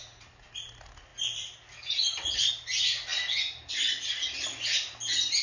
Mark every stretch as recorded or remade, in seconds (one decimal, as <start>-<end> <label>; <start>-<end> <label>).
0.0-5.4 recorded